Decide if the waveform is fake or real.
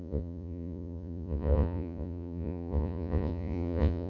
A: fake